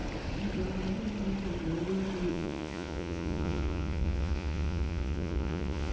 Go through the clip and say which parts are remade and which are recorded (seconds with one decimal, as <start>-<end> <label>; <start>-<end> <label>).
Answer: 0.0-2.3 recorded; 2.3-5.9 remade